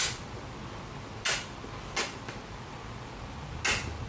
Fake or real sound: real